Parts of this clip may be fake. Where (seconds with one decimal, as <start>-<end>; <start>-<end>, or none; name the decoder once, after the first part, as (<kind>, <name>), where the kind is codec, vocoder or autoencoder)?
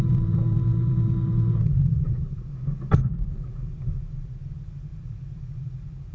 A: 0.0-6.1 (vocoder, BigVGAN v2)